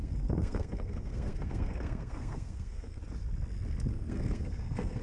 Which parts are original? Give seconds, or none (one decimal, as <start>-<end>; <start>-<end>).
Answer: 3.0-3.9